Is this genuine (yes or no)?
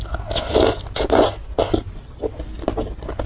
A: yes